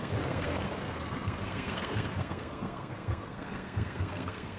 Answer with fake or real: fake